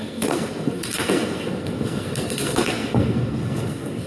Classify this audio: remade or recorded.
remade